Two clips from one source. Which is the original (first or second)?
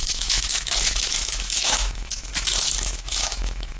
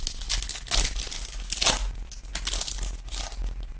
second